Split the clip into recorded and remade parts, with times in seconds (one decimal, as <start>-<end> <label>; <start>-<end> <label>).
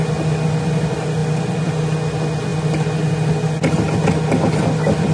0.0-5.1 recorded